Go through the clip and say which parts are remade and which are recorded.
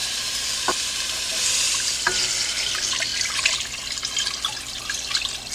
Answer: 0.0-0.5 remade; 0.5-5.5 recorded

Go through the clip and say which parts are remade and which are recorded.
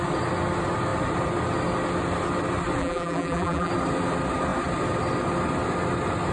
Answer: 0.0-2.8 recorded; 2.8-3.7 remade; 3.7-6.3 recorded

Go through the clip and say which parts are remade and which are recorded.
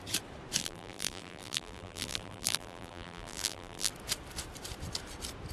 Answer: 0.0-0.6 recorded; 0.6-3.9 remade; 3.9-5.5 recorded